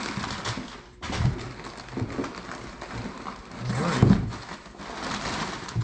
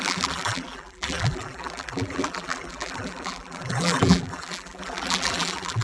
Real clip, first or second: first